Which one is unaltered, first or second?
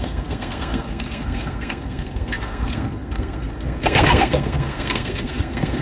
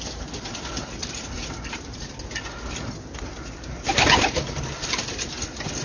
second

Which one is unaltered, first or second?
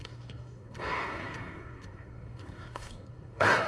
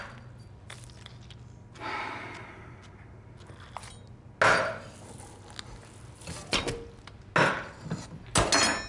second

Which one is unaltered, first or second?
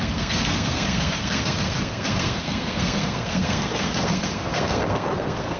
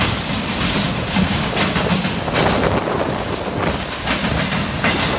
second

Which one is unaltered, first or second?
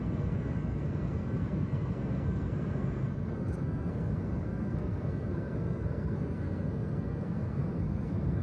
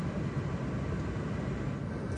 second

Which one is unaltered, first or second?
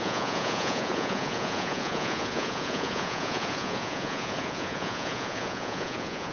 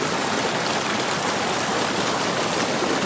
second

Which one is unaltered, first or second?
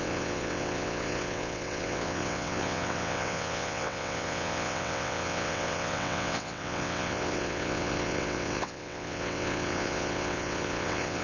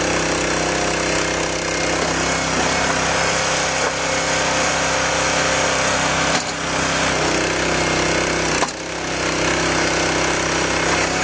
second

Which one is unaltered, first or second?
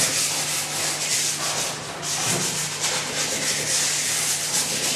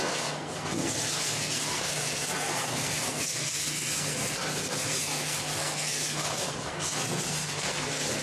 first